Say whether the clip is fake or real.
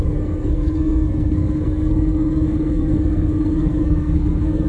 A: fake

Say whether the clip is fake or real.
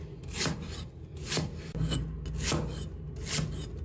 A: real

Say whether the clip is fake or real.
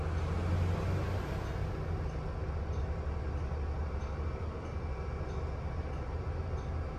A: real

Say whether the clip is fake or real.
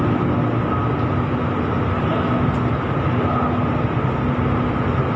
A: real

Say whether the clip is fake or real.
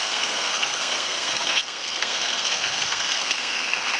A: fake